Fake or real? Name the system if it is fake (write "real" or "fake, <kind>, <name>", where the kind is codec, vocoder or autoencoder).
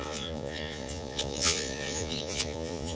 fake, vocoder, Vocos